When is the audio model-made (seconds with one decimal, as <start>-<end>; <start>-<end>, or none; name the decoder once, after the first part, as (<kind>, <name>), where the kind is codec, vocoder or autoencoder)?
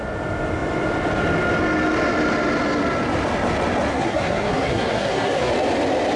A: 3.9-5.5 (codec, SNAC)